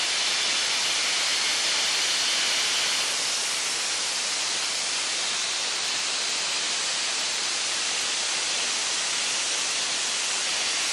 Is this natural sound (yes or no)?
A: yes